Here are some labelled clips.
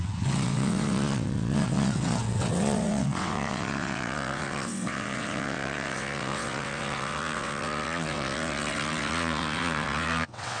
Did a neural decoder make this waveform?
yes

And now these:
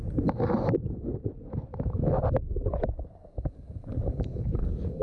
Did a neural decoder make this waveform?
no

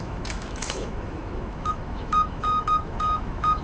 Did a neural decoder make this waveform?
yes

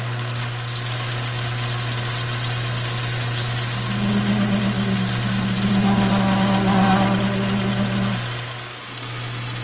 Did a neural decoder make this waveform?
no